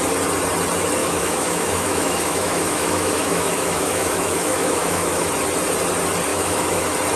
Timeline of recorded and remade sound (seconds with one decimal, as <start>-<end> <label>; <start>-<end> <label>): 0.0-1.0 recorded; 1.0-5.3 remade; 5.3-6.3 recorded; 6.3-6.8 remade; 6.8-7.2 recorded